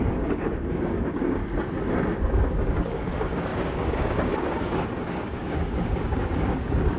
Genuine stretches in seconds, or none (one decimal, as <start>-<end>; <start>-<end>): 1.4-2.6